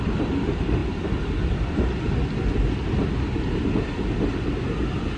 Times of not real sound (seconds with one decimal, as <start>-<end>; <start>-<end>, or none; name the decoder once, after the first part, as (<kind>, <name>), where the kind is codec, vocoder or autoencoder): none